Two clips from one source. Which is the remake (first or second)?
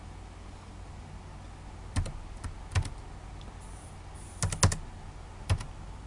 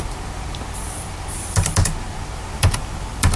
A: second